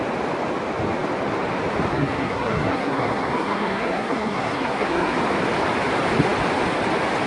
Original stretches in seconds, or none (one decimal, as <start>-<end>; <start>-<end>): 0.0-1.9; 5.2-7.3